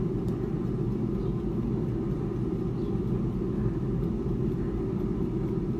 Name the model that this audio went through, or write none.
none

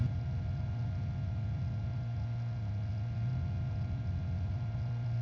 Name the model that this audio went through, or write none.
none